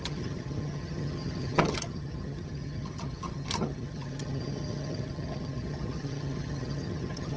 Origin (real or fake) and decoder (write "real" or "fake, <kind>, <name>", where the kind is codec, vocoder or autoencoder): fake, vocoder, HiFi-GAN